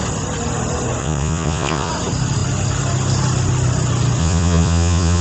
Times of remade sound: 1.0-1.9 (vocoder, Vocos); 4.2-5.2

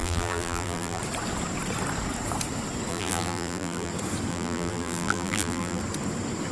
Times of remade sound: 0.0-1.0 (vocoder, BigVGAN v2); 2.9-3.9; 4.3-5.8

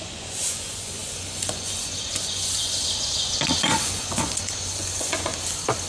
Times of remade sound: 0.0-5.3 (vocoder, Vocos)

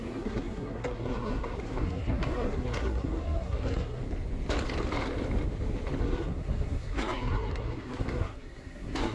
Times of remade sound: 0.0-4.0 (codec, SNAC); 6.0-9.1

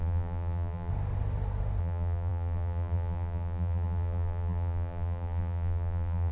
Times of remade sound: 0.0-0.9 (vocoder, BigVGAN v2); 1.8-6.3

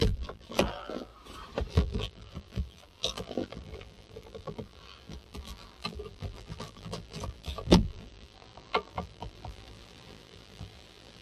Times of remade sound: 0.0-1.1 (vocoder, BigVGAN v2); 1.7-11.2